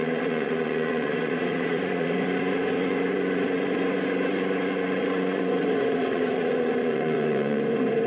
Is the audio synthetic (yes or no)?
yes